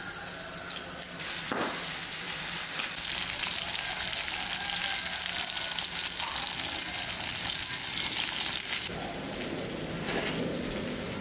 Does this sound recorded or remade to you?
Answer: recorded